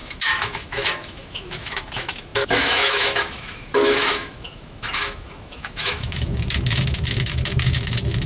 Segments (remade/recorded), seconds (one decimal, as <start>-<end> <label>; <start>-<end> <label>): 0.0-8.3 remade